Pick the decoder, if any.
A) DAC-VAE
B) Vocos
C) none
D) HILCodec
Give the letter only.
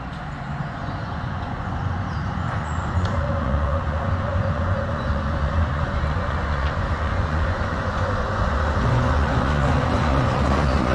B